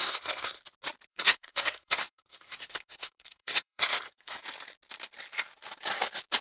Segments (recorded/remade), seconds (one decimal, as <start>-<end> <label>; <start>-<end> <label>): 0.0-0.6 remade; 0.6-1.1 recorded; 1.1-4.4 remade; 4.4-6.4 recorded